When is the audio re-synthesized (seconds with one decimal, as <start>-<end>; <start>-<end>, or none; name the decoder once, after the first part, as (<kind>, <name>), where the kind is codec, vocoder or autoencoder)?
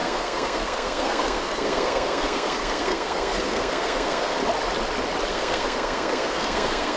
0.0-4.4 (codec, SNAC); 5.3-7.0